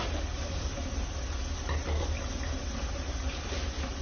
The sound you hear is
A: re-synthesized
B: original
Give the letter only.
B